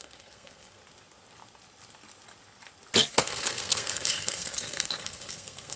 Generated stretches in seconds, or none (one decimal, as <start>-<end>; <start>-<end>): 0.0-0.8; 3.1-5.8